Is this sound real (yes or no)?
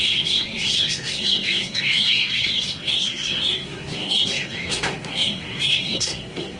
no